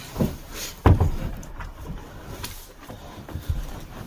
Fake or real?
fake